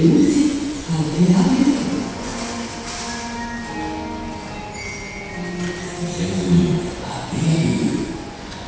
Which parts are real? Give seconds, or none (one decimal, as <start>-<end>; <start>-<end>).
2.3-6.6